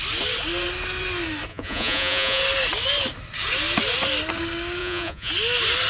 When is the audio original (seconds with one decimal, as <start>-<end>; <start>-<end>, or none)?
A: 0.0-1.5; 2.4-4.8; 5.3-5.9